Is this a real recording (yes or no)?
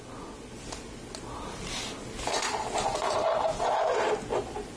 yes